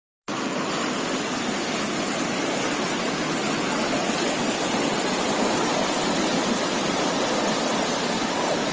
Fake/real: real